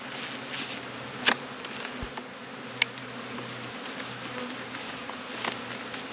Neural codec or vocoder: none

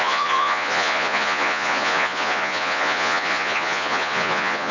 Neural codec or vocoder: vocoder, Vocos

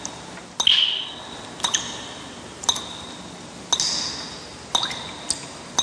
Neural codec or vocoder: none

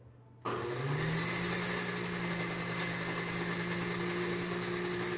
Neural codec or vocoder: none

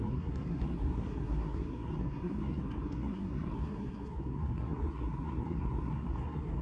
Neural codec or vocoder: codec, SNAC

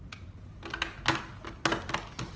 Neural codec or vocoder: none